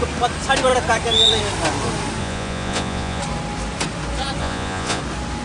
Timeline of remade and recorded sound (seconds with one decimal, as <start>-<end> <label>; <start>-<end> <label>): 0.0-2.2 recorded; 2.2-3.2 remade; 3.2-4.4 recorded; 4.4-5.0 remade; 5.0-5.4 recorded